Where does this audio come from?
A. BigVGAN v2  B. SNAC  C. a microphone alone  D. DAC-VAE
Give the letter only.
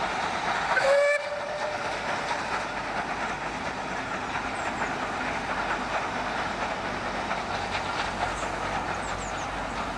C